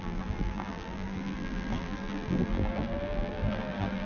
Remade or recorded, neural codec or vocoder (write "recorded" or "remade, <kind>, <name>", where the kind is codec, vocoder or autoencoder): remade, vocoder, BigVGAN v2